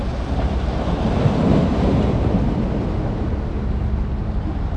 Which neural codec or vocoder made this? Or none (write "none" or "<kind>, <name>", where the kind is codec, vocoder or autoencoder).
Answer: none